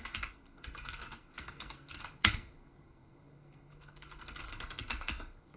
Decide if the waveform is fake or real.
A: fake